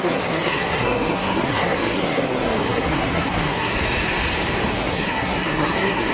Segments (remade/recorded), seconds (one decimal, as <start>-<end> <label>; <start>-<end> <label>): 0.0-3.7 remade; 3.7-4.7 recorded; 4.7-6.1 remade